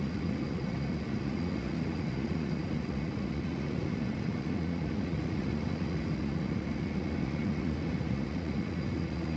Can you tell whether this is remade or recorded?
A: remade